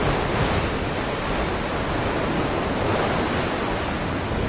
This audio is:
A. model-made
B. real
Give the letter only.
B